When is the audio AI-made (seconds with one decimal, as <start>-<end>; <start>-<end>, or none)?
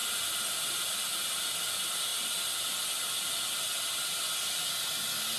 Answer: none